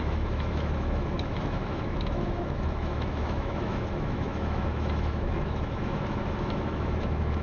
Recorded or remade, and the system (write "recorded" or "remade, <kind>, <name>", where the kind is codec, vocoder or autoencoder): remade, autoencoder, DAC-VAE